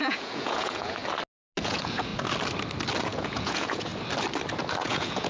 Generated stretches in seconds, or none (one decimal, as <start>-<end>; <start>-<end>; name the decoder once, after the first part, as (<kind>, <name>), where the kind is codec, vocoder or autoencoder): 0.0-1.0 (vocoder, Vocos); 1.6-2.1; 3.0-3.9; 4.8-5.3

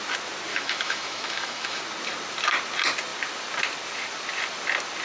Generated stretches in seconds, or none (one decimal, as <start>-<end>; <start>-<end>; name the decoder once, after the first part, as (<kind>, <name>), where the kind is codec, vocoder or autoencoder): 0.5-1.8 (autoencoder, DAC-VAE)

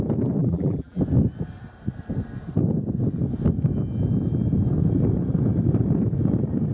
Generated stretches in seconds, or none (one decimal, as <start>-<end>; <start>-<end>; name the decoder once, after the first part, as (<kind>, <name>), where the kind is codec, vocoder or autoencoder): 0.4-1.0 (vocoder, BigVGAN v2)